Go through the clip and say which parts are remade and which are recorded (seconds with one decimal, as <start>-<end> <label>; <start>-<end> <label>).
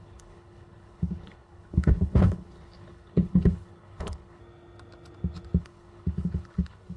0.0-4.4 remade; 4.4-5.6 recorded; 5.6-7.0 remade